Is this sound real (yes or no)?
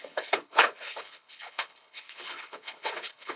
no